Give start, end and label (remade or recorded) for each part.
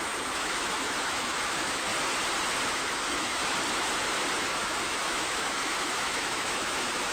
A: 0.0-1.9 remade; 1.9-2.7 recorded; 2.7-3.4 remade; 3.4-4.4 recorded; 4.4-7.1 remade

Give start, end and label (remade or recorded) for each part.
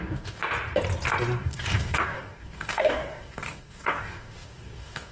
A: 0.0-0.4 remade; 0.4-1.4 recorded; 1.4-5.1 remade